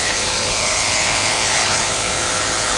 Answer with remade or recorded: remade